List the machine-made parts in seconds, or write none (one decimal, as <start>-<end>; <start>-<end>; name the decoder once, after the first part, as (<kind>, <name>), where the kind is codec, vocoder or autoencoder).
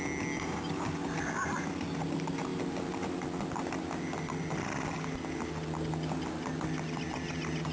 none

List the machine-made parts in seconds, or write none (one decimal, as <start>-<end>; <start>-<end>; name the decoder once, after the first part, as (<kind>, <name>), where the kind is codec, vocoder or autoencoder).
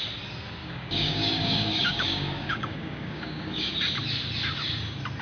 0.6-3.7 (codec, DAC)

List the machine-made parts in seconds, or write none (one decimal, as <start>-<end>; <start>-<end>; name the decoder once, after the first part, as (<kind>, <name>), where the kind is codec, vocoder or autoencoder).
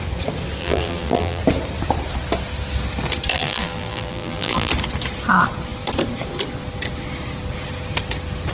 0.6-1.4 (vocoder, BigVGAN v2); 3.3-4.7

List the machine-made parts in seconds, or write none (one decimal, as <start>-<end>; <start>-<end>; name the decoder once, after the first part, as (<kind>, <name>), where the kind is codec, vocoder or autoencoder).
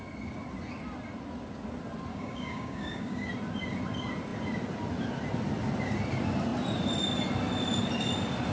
2.1-3.3 (codec, DAC)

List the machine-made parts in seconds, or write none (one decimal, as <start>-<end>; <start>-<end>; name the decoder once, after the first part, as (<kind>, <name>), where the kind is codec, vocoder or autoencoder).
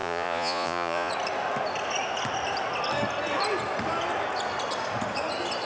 0.0-1.1 (vocoder, Vocos)